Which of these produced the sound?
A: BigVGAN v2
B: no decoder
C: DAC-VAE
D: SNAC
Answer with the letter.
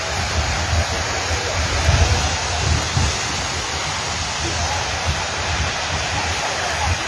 B